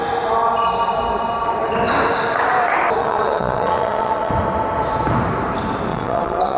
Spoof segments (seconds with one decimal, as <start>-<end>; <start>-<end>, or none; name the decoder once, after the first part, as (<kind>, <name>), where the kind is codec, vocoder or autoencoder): 3.0-4.3 (vocoder, WaveNeXt); 5.9-6.6